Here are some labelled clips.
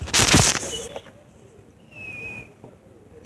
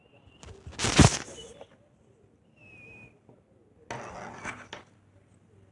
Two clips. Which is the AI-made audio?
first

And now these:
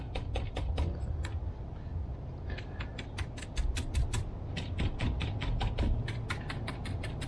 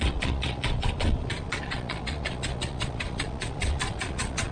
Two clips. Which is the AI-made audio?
second